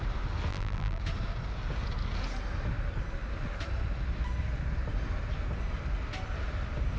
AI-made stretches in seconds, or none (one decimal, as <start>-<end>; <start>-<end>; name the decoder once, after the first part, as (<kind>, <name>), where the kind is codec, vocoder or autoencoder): 0.5-1.0 (vocoder, BigVGAN v2)